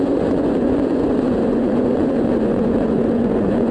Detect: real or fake fake